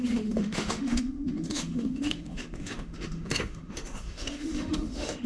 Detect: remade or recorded remade